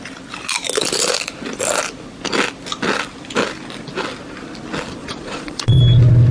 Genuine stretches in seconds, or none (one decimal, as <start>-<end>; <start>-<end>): 0.0-5.0; 5.8-6.3